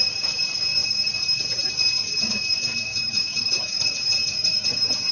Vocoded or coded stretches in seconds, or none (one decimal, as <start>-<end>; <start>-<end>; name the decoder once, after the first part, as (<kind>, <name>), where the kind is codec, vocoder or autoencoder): 2.9-3.7 (autoencoder, DAC-VAE)